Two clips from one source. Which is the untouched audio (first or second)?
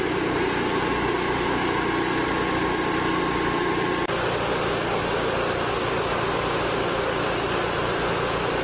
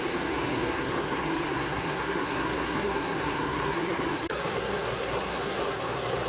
first